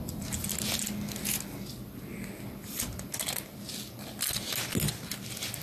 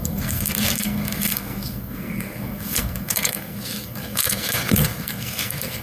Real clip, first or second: first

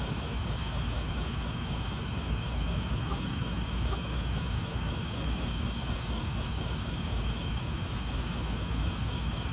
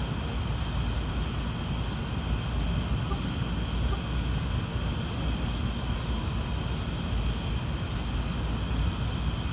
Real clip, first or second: second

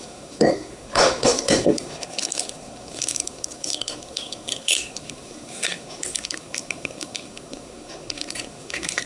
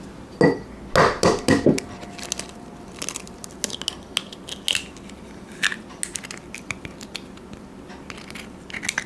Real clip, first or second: second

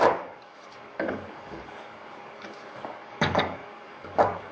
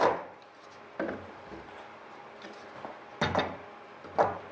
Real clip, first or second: second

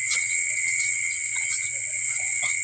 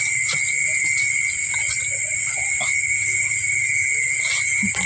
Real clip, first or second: second